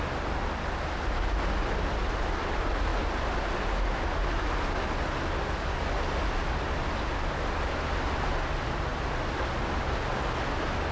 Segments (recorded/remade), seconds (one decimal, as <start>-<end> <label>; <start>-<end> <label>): 0.0-10.9 recorded